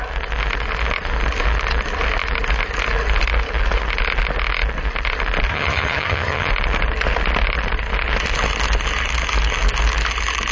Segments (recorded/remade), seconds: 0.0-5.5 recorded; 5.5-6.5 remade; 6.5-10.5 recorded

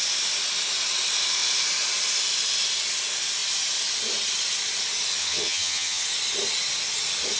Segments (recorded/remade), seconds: 0.0-5.2 recorded; 5.2-6.0 remade; 6.0-7.4 recorded